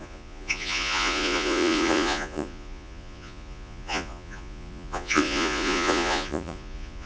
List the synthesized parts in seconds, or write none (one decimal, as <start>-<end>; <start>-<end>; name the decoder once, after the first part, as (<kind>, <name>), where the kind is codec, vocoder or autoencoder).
0.0-7.1 (vocoder, Vocos)